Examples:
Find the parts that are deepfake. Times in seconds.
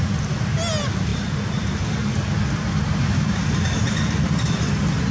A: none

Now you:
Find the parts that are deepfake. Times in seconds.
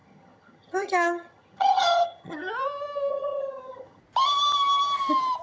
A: 0.0-2.5; 3.1-4.0